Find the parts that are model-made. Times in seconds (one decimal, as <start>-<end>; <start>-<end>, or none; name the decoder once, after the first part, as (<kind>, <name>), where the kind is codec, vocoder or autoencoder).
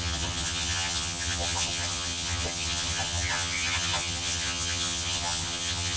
0.0-6.0 (vocoder, HiFi-GAN)